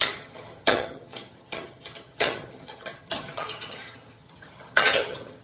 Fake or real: fake